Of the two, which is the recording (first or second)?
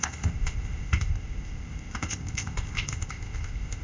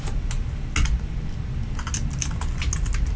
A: second